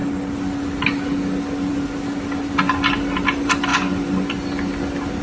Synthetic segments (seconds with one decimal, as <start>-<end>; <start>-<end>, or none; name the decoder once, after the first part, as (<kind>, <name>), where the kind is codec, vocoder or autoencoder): none